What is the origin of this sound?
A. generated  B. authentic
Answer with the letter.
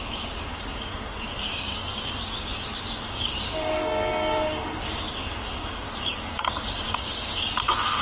A